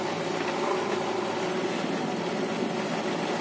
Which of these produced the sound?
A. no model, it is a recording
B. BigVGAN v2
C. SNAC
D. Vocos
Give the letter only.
A